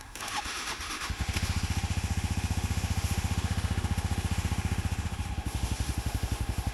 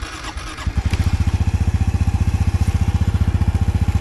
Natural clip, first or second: second